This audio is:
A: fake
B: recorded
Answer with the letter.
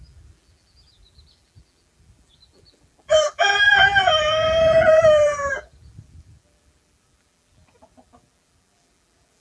A